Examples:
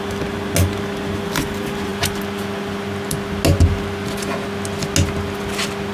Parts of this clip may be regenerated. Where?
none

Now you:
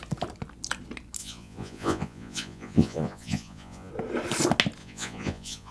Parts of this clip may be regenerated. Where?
1.2-3.9; 4.8-5.7

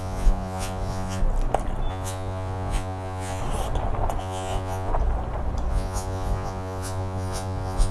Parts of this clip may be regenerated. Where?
0.0-1.2; 1.9-3.4; 4.2-4.9; 5.7-7.9

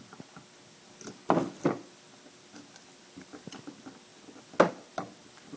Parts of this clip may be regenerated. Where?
none

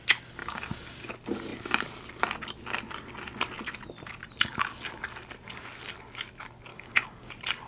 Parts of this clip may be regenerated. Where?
0.4-1.1; 6.7-7.3

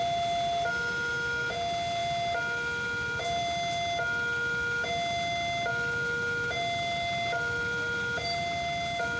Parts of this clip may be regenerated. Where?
none

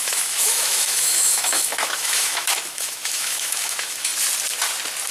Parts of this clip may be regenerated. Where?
0.0-4.1